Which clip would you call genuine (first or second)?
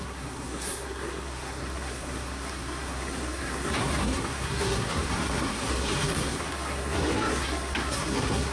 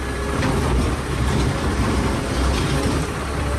second